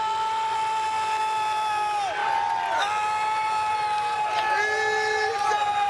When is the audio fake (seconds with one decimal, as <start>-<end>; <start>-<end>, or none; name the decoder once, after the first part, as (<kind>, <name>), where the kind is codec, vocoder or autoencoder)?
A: none